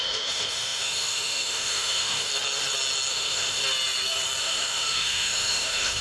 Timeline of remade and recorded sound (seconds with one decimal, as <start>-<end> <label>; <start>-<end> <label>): 0.0-2.3 remade; 2.3-3.1 recorded; 3.1-3.6 remade; 3.6-4.4 recorded; 4.4-6.0 remade